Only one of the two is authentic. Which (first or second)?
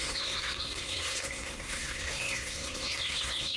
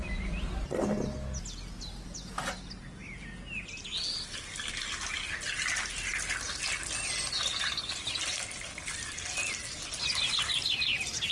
second